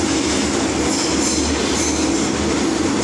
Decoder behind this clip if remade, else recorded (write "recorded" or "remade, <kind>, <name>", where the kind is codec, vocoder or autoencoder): recorded